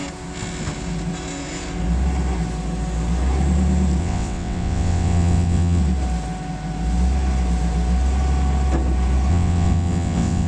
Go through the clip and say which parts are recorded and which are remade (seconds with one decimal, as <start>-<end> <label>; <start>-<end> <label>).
0.0-4.0 recorded; 4.0-5.8 remade; 5.8-9.3 recorded; 9.3-10.5 remade